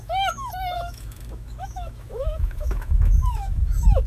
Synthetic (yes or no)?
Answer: yes